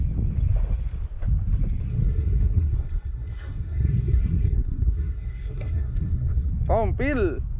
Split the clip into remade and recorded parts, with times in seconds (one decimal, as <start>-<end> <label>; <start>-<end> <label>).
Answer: 0.0-1.9 recorded; 1.9-6.5 remade; 6.5-7.6 recorded

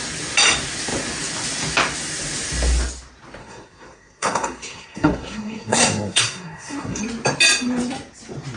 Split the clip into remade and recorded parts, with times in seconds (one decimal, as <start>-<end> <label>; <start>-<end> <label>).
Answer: 0.0-3.4 recorded; 3.4-7.0 remade; 7.0-8.6 recorded

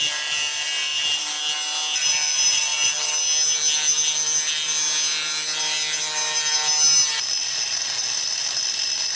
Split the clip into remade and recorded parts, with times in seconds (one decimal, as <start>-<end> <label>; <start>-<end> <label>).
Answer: 0.0-9.2 recorded

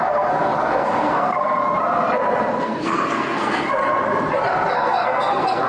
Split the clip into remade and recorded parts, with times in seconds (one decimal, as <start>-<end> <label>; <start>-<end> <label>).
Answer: 0.0-1.6 remade; 1.6-2.6 recorded; 2.6-3.8 remade; 3.8-4.7 recorded; 4.7-5.7 remade

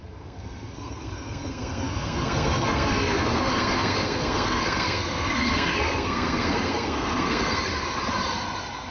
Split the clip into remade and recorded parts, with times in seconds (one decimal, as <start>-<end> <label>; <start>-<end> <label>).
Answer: 0.0-7.7 remade; 7.7-8.9 recorded

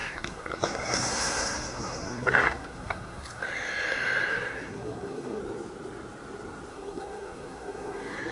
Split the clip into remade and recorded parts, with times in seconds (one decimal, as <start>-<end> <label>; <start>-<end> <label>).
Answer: 0.0-3.4 remade; 3.4-4.3 recorded; 4.3-5.4 remade; 5.4-6.7 recorded; 6.7-8.3 remade